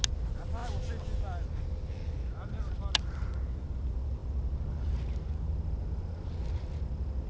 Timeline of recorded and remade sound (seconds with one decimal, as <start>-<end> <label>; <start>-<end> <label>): 0.0-7.3 recorded